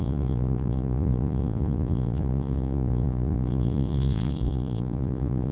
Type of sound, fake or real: fake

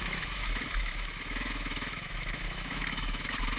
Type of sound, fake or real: fake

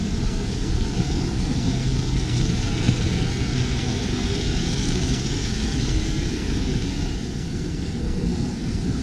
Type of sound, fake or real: fake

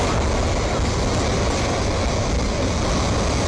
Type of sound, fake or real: real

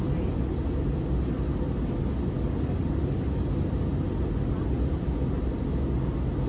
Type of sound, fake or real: real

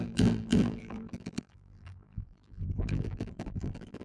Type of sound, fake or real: fake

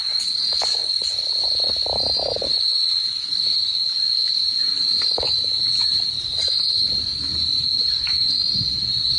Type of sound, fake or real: real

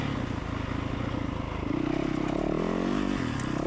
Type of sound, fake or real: real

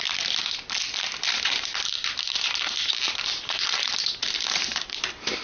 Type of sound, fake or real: fake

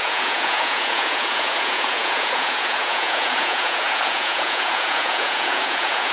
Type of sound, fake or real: fake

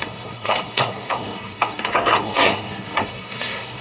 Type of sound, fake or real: fake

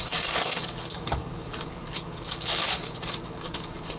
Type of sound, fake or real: fake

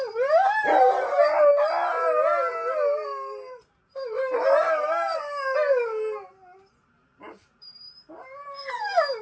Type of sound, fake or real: real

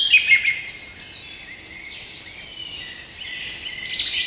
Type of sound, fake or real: real